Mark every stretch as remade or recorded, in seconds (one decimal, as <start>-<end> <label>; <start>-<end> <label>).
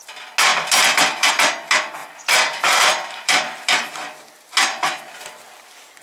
0.0-2.0 recorded; 2.0-3.7 remade; 3.7-6.0 recorded